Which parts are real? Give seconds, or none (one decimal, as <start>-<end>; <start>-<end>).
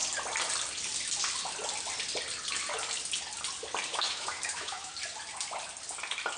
0.0-3.9; 4.9-6.4